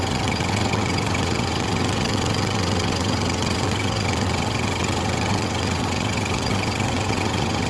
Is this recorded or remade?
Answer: remade